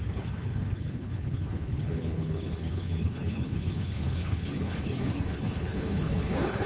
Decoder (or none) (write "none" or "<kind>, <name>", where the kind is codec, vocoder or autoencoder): codec, HILCodec